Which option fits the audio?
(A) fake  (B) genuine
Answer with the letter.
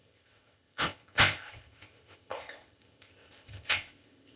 A